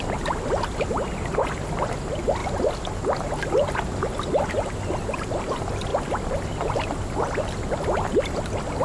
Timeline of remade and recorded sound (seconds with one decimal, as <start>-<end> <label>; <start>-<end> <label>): 0.0-8.8 recorded